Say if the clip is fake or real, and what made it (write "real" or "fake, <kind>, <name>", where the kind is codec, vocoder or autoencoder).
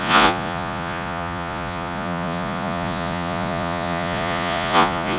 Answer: fake, vocoder, Vocos